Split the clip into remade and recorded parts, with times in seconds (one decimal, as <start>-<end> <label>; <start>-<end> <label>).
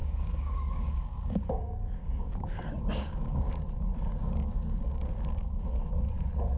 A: 0.0-3.5 remade; 3.5-4.2 recorded; 4.2-5.6 remade; 5.6-6.6 recorded